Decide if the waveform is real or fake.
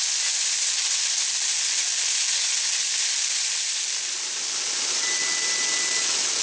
real